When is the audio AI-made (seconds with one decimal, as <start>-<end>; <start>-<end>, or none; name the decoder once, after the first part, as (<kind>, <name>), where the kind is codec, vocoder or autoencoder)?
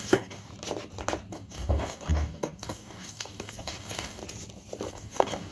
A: 0.0-0.5 (codec, DAC); 1.3-4.2; 4.9-5.5